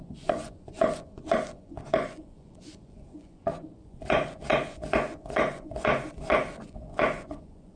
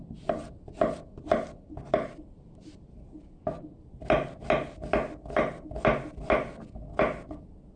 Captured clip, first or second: second